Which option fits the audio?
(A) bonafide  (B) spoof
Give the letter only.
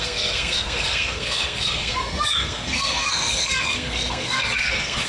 B